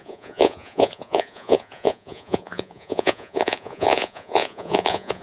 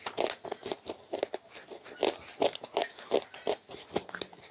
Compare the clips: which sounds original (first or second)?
second